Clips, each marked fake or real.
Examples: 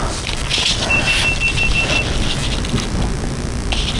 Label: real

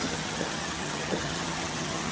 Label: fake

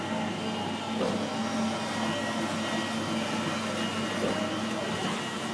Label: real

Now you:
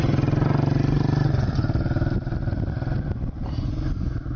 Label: real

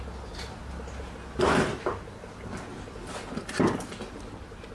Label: real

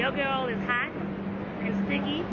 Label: real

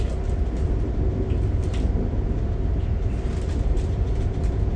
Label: real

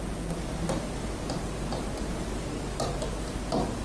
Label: real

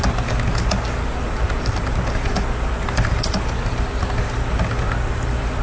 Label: real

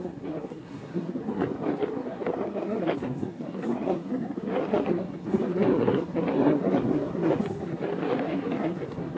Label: fake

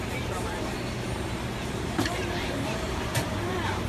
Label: fake